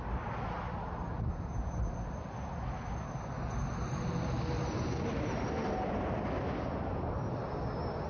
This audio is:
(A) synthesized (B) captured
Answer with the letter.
B